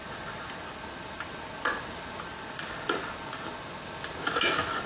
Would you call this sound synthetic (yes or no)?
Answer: no